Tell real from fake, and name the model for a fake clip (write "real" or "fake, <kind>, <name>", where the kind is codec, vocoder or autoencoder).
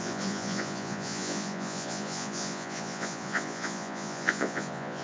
fake, vocoder, Vocos